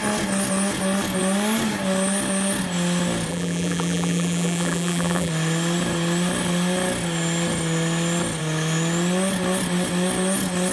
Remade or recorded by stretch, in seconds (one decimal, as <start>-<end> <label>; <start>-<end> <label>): 0.0-3.3 recorded; 3.3-5.3 remade; 5.3-10.7 recorded